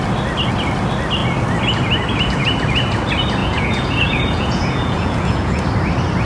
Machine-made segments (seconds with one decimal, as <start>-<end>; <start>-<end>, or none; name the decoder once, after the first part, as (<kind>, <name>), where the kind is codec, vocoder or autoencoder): 3.4-5.6 (vocoder, Vocos)